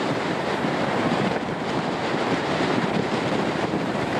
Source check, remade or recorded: remade